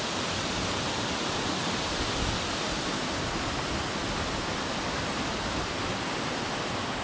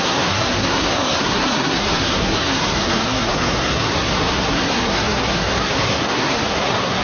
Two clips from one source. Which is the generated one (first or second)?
second